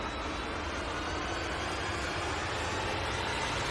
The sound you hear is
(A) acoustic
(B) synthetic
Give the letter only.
A